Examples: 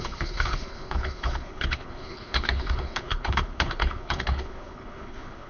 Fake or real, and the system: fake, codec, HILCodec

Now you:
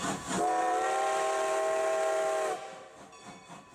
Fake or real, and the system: real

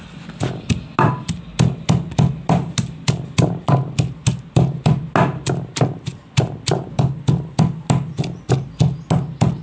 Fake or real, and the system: real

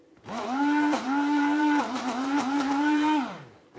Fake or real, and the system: fake, vocoder, BigVGAN v2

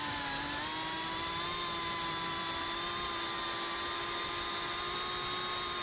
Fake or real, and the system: real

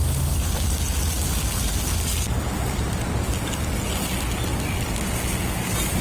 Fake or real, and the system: real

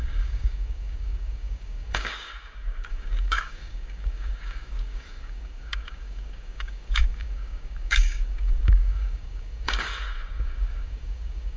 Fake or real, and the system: fake, codec, DAC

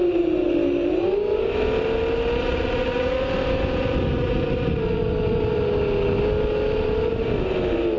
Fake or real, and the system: real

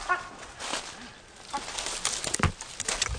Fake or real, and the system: real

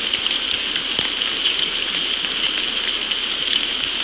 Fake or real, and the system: real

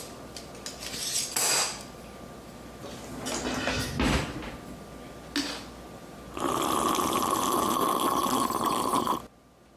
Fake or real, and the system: real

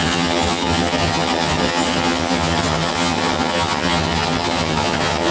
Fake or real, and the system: fake, vocoder, HiFi-GAN